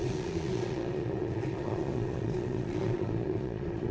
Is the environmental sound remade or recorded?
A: remade